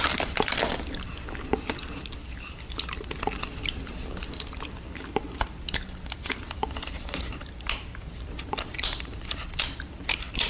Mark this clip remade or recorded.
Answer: remade